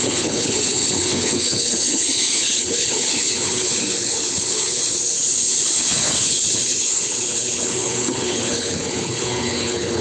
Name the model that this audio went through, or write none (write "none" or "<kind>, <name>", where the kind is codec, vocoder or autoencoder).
codec, HILCodec